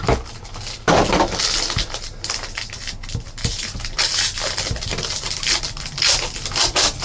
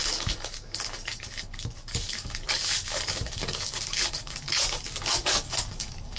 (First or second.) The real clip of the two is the first